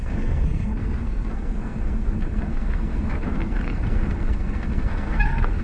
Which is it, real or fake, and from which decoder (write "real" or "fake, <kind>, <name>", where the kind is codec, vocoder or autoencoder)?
fake, codec, SNAC